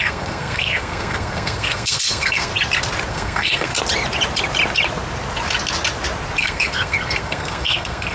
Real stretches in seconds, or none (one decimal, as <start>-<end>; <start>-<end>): 2.5-3.1; 3.7-6.4